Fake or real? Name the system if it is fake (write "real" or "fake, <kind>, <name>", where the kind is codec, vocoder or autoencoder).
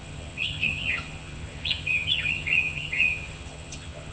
fake, vocoder, HiFi-GAN